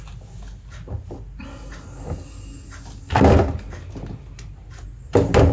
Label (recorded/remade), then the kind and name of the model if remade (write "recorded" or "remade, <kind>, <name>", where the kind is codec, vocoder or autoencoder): recorded